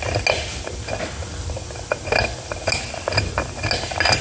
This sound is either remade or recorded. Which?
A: recorded